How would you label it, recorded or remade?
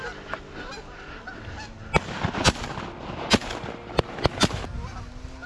recorded